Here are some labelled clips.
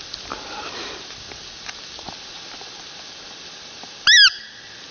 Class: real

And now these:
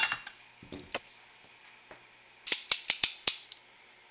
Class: real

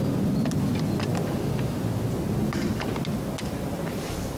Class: real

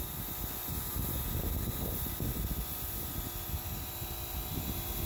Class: real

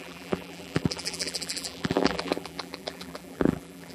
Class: fake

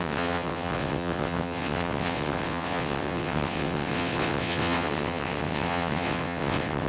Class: fake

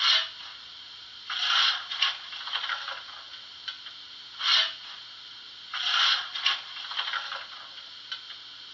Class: real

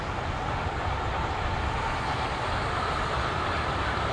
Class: real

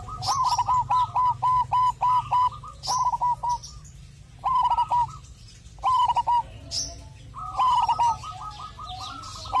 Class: real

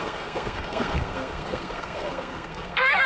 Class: fake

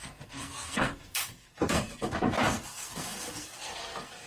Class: fake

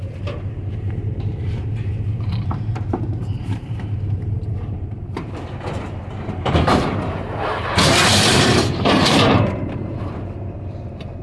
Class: fake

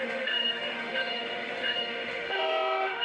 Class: fake